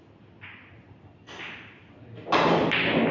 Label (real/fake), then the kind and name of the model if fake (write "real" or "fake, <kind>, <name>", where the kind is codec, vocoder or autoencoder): real